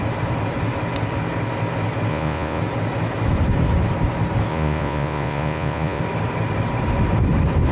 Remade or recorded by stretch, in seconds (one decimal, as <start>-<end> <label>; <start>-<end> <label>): 0.0-2.1 recorded; 2.1-2.6 remade; 2.6-4.5 recorded; 4.5-6.0 remade; 6.0-7.7 recorded